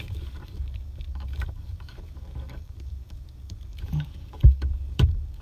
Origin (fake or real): fake